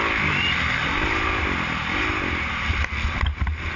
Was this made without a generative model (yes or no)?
yes